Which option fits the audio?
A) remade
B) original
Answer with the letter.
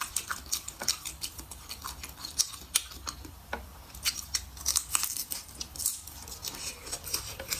A